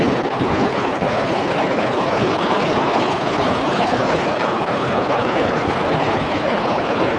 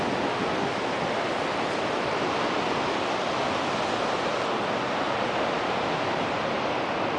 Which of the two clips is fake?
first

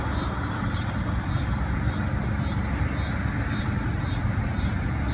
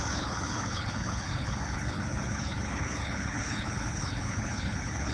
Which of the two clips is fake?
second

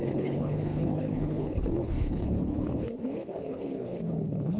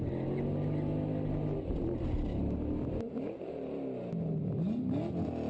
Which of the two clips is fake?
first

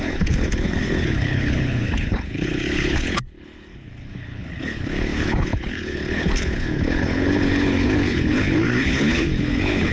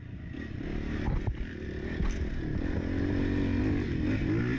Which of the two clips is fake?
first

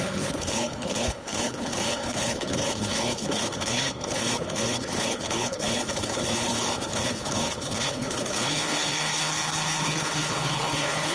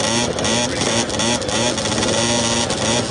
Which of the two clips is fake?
first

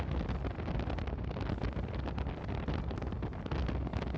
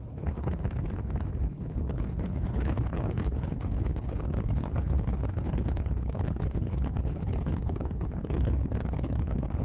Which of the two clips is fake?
second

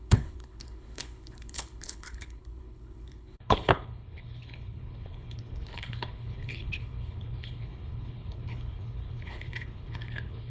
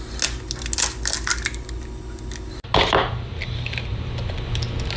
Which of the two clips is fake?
first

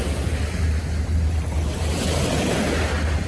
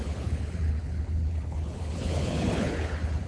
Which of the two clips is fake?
second